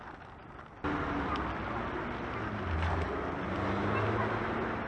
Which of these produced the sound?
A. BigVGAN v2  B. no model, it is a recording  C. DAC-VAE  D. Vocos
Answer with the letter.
B